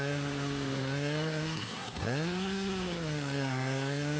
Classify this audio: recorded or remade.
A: remade